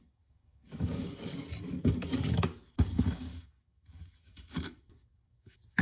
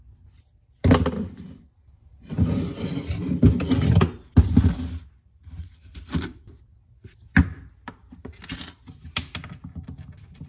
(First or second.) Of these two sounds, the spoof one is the first